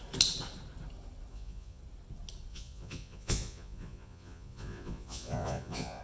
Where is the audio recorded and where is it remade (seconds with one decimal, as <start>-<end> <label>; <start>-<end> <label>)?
0.0-1.3 recorded; 1.3-1.8 remade; 1.8-2.5 recorded; 2.5-6.0 remade